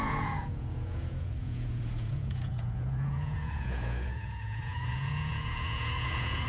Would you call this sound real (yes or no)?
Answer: no